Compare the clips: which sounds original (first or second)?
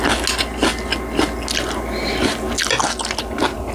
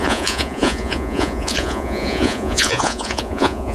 first